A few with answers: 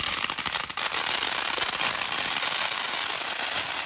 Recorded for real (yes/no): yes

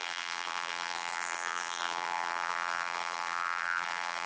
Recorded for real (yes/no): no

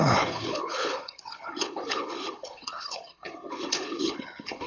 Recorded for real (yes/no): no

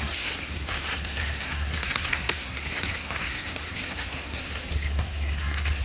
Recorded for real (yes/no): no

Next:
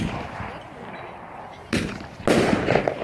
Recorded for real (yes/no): yes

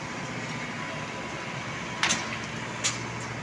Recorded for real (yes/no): yes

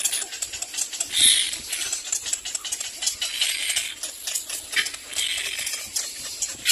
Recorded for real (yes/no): yes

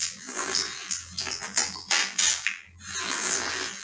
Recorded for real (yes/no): no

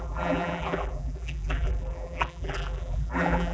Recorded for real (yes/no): no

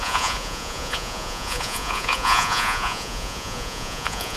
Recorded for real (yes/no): no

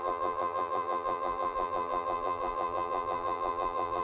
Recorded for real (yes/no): no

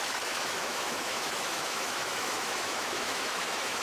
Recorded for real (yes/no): no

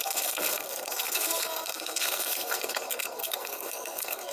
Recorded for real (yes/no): no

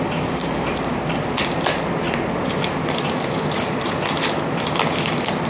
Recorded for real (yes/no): yes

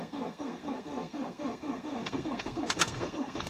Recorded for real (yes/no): no